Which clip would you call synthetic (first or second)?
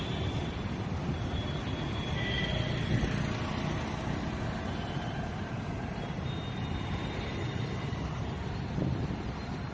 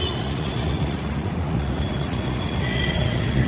second